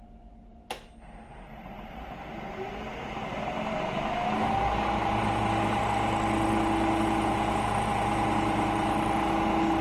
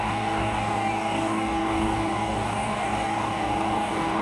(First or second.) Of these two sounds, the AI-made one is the second